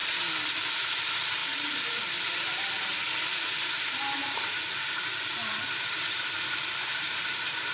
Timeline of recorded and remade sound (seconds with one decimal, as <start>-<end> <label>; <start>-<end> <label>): 0.0-0.7 recorded; 0.7-7.7 remade

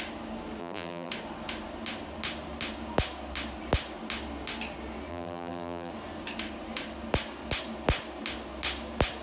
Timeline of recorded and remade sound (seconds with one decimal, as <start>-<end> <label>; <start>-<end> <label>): 0.0-0.6 recorded; 0.6-1.1 remade; 1.1-5.1 recorded; 5.1-5.9 remade; 5.9-9.2 recorded

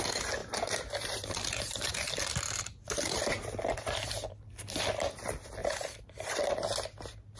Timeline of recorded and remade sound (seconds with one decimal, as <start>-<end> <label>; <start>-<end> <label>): 0.0-0.4 recorded; 0.4-4.8 remade; 4.8-5.6 recorded; 5.6-6.4 remade; 6.4-7.4 recorded

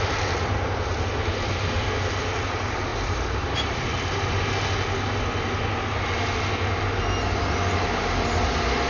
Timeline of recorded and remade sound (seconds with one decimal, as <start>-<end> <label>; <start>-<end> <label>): 0.0-2.9 recorded; 2.9-3.8 remade; 3.8-8.9 recorded

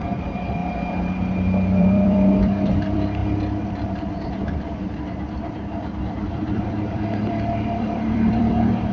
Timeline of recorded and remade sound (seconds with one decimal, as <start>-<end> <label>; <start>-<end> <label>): 0.0-0.6 remade; 0.6-1.8 recorded; 1.8-3.2 remade; 3.2-6.2 recorded; 6.2-8.9 remade